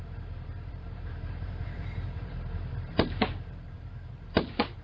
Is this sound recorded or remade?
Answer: remade